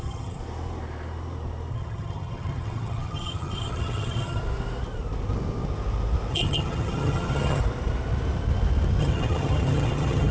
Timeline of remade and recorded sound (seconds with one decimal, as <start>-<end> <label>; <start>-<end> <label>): 0.0-0.4 remade; 0.4-1.7 recorded; 1.7-4.4 remade; 4.4-6.3 recorded; 6.3-7.6 remade; 7.6-9.0 recorded; 9.0-10.3 remade

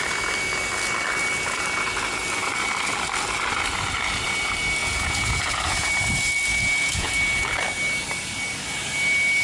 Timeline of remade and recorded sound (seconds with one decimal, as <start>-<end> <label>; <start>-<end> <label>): 0.0-4.8 recorded; 4.8-5.9 remade; 5.9-6.5 recorded; 6.5-7.1 remade; 7.1-9.4 recorded